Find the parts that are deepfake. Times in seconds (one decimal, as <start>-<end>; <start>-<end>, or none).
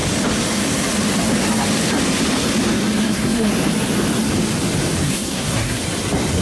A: 3.0-3.5; 5.0-5.8